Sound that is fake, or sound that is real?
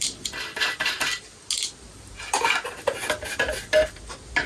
real